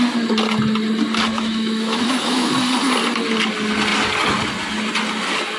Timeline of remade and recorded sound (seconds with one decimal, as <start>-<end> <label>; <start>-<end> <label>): 0.0-1.3 recorded; 1.3-2.5 remade; 2.5-5.6 recorded

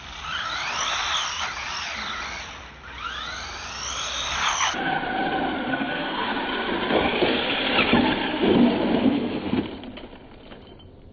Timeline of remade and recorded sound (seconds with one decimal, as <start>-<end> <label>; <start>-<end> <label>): 0.0-5.7 recorded; 5.7-6.4 remade; 6.4-9.0 recorded; 9.0-9.6 remade; 9.6-11.1 recorded

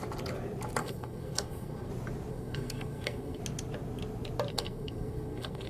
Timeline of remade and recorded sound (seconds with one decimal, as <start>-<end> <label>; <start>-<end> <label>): 0.0-0.8 recorded; 0.8-1.9 remade; 1.9-2.3 recorded; 2.3-3.4 remade; 3.4-4.5 recorded; 4.5-5.7 remade

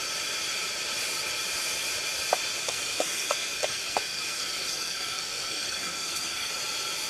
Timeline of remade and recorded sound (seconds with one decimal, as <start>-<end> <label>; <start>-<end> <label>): 0.0-2.6 recorded; 2.6-6.5 remade; 6.5-7.1 recorded

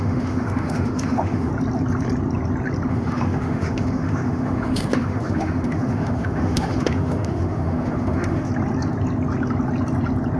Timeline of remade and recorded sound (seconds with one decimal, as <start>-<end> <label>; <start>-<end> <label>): 0.0-1.5 remade; 1.5-2.9 recorded; 2.9-8.5 remade; 8.5-10.4 recorded

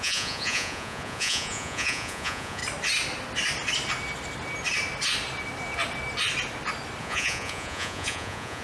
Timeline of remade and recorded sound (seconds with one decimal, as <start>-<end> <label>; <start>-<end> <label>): 0.0-2.6 remade; 2.6-7.0 recorded; 7.0-8.6 remade